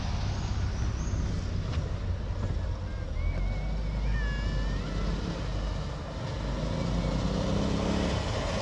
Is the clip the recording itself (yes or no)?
yes